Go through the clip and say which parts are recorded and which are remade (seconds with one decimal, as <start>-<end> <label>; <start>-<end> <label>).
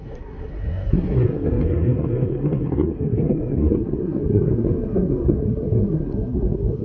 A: 0.0-6.8 remade